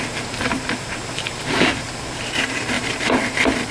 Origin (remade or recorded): remade